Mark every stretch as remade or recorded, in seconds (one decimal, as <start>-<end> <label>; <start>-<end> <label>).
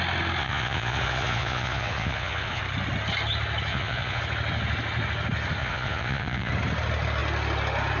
0.0-0.4 recorded; 0.4-2.6 remade; 2.6-3.7 recorded; 3.7-4.2 remade; 4.2-5.6 recorded; 5.6-6.5 remade; 6.5-8.0 recorded